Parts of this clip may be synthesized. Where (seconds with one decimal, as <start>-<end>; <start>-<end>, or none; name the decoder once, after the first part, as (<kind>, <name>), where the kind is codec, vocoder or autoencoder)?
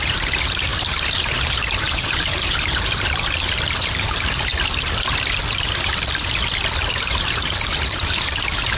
0.0-4.5 (vocoder, BigVGAN v2); 6.9-8.8